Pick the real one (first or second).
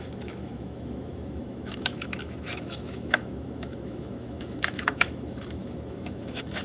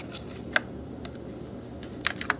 second